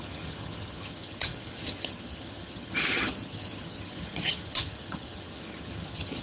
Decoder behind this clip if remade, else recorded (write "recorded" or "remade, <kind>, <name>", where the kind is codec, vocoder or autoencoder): remade, vocoder, HiFi-GAN